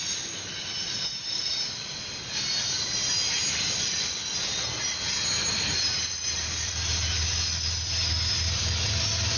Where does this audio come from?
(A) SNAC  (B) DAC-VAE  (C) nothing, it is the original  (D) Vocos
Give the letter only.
C